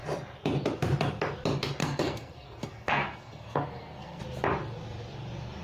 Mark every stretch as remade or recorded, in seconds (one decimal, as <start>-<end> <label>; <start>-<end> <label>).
0.0-1.8 recorded; 1.8-4.2 remade; 4.2-5.6 recorded